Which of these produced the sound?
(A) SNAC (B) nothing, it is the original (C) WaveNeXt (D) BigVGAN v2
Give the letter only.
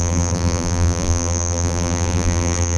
D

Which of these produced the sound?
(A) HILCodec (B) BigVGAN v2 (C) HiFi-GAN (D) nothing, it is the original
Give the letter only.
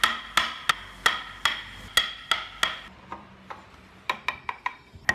D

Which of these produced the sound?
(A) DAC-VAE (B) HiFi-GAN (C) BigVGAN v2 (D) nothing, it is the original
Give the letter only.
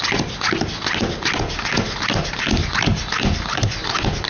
D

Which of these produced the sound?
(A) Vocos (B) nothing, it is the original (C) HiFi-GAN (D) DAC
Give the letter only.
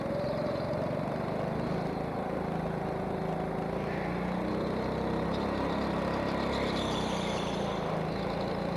B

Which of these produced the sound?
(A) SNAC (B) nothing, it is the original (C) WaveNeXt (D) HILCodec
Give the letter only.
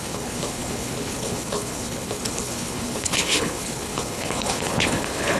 D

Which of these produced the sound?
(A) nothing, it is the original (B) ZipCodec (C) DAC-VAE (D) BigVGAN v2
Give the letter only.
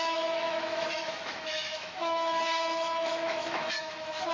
C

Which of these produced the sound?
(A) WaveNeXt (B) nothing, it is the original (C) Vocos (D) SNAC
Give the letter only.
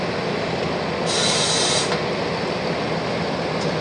B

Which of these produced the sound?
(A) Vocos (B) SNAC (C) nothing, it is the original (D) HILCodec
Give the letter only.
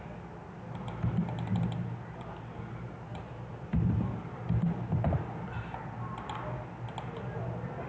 C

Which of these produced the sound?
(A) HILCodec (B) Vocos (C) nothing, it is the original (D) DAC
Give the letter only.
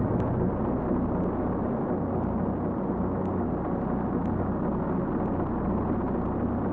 C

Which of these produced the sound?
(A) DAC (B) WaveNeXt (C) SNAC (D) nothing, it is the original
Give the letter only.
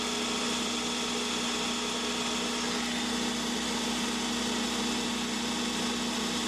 D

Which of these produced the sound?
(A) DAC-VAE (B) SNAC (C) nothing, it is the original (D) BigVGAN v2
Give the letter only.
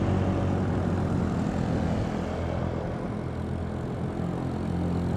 C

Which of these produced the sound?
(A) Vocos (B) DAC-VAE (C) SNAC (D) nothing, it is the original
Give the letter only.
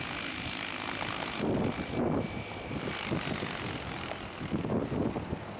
D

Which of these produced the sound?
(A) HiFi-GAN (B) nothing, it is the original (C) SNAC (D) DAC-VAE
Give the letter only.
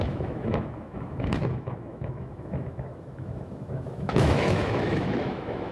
D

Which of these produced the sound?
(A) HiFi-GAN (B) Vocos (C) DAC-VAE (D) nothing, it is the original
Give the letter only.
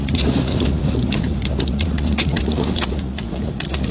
B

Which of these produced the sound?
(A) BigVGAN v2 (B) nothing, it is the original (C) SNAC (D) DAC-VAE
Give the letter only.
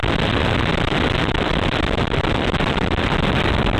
B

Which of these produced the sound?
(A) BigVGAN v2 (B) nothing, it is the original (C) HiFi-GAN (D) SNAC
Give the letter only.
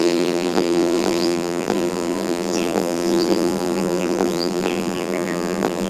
A